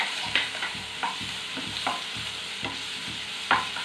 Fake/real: fake